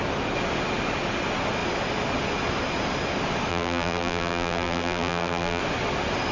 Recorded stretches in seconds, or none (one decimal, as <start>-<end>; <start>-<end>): 0.0-3.5; 5.6-6.3